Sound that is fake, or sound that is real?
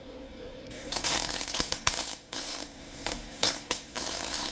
fake